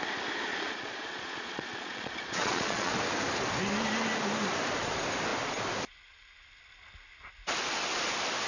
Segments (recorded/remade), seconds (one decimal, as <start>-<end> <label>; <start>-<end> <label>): 0.0-0.5 recorded; 0.5-2.9 remade; 2.9-8.5 recorded